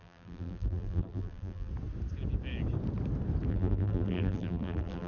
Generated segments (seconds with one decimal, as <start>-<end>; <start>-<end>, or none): 0.0-1.7; 3.5-5.1